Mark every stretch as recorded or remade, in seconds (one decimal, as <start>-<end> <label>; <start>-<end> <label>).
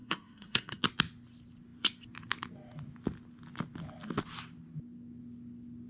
0.0-0.8 remade; 0.8-5.9 recorded